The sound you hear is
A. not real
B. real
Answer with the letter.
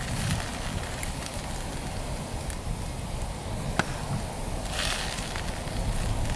B